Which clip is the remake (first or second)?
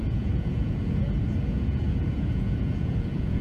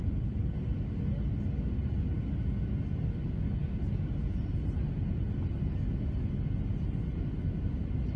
first